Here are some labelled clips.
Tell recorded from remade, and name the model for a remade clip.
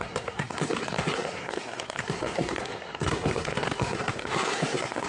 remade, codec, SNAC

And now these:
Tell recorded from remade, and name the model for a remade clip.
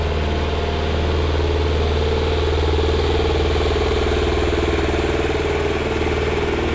recorded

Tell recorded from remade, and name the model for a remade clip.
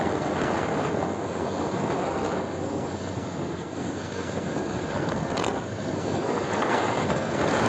remade, codec, SNAC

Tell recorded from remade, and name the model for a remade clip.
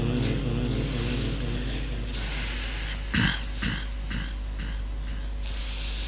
recorded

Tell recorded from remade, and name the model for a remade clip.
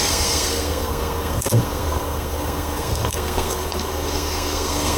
remade, codec, SNAC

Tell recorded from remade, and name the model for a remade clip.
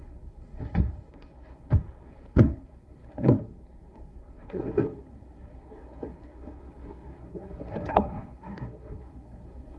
remade, codec, SNAC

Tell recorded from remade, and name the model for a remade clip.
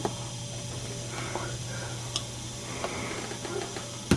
recorded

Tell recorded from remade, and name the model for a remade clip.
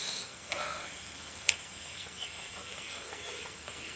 remade, codec, SNAC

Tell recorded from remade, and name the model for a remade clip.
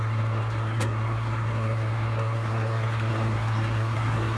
remade, codec, SNAC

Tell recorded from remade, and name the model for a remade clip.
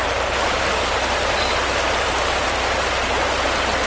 recorded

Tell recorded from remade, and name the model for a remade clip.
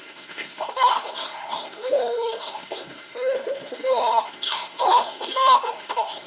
remade, codec, SNAC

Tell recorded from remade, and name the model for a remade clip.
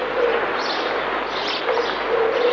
recorded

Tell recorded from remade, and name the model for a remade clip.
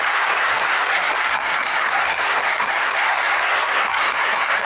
remade, codec, SNAC